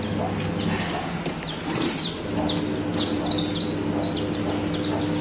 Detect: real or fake real